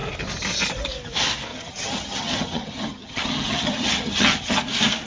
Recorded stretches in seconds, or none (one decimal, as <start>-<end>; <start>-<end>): 0.0-1.5; 4.6-5.1